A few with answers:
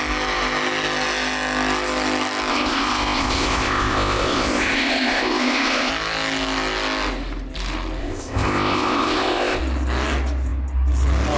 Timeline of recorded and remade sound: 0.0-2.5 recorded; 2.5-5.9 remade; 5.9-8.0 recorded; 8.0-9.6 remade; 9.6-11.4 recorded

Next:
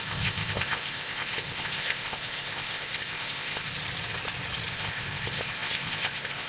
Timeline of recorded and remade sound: 0.0-3.7 remade; 3.7-4.7 recorded; 4.7-6.5 remade

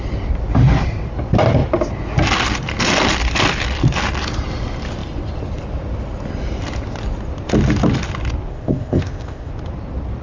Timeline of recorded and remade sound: 0.0-8.5 recorded; 8.5-9.5 remade; 9.5-10.2 recorded

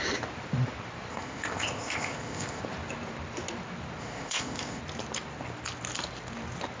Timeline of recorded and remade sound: 0.0-1.1 recorded; 1.1-2.6 remade; 2.6-4.0 recorded; 4.0-4.8 remade; 4.8-6.8 recorded

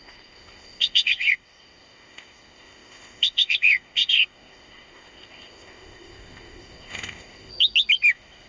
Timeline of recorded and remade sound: 0.0-7.5 remade; 7.5-8.1 recorded; 8.1-8.5 remade

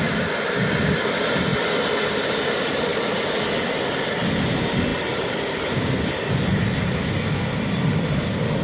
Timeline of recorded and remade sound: 0.0-8.6 recorded